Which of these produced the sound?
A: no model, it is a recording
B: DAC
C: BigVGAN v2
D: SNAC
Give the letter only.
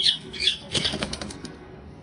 D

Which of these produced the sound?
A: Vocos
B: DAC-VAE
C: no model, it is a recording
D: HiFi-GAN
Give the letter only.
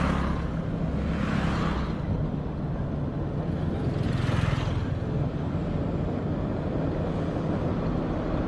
C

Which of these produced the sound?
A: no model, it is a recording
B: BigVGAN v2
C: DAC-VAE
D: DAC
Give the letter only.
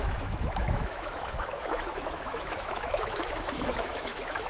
C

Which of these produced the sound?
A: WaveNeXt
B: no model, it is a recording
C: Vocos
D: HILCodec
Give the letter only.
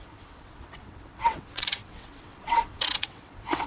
A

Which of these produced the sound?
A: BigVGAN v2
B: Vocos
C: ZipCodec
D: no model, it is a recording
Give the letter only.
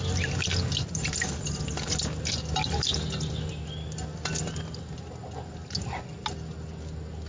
D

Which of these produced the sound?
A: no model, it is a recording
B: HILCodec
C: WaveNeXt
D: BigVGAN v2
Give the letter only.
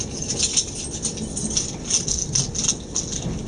A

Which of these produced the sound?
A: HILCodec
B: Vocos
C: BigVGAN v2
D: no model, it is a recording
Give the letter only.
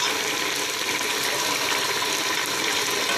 D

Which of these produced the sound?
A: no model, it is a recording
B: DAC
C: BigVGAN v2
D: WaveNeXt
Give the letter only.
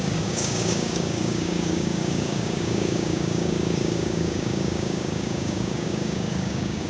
B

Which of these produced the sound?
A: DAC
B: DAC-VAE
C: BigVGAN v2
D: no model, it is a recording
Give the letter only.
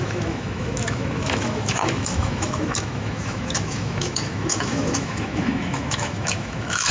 B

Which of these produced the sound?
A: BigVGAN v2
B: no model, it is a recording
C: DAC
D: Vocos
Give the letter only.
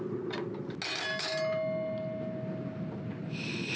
B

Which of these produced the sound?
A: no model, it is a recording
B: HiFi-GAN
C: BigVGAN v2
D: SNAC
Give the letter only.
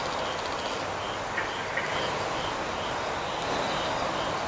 A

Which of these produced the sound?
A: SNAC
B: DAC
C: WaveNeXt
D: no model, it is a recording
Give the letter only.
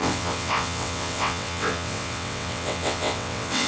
C